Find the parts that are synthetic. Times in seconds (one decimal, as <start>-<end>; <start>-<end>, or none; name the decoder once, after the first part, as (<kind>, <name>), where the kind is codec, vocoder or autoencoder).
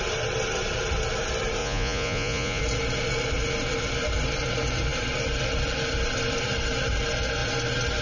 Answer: 1.6-2.6 (vocoder, Vocos)